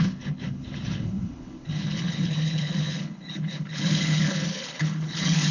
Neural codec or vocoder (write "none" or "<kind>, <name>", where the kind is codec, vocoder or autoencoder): codec, HILCodec